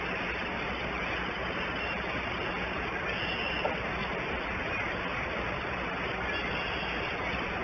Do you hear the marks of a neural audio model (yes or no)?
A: no